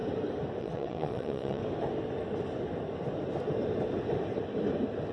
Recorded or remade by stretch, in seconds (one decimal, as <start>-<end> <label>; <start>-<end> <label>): 0.0-0.6 recorded; 0.6-1.6 remade; 1.6-5.1 recorded